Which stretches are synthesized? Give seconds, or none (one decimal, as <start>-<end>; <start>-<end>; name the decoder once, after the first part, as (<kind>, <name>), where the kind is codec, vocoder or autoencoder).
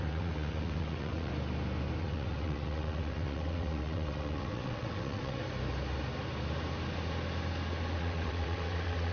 0.0-1.3 (vocoder, WaveNeXt); 2.0-5.4; 8.0-9.1